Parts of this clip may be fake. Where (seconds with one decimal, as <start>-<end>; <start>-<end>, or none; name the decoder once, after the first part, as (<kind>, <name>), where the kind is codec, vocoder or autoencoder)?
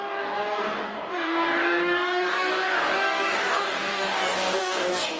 0.0-5.2 (codec, DAC)